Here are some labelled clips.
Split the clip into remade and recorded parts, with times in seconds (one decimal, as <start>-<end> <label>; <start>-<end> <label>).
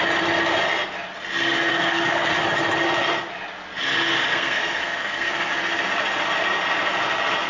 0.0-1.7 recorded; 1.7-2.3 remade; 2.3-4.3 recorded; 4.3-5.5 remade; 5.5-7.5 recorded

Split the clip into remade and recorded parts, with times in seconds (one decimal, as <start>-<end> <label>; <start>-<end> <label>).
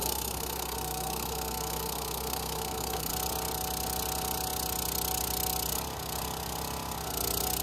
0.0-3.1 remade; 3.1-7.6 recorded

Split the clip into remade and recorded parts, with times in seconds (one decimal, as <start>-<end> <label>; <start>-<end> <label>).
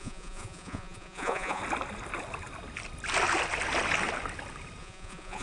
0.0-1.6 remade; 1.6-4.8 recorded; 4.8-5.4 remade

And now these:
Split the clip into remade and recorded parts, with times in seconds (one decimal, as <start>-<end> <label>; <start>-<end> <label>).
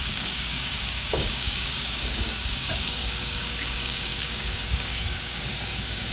0.0-6.1 remade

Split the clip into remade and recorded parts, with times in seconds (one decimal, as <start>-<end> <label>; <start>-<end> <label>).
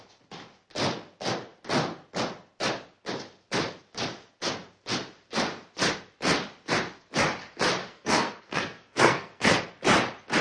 0.0-7.8 recorded; 7.8-9.6 remade; 9.6-10.4 recorded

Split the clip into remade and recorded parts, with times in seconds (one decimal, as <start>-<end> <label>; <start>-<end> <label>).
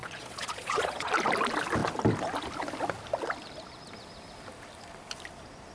0.0-1.1 remade; 1.1-5.7 recorded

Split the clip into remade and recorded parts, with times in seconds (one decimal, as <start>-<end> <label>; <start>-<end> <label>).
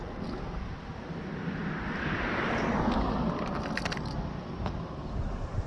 0.0-5.7 recorded